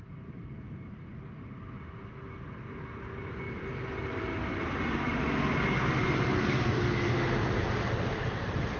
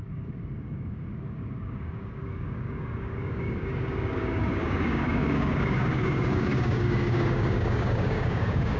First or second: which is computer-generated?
second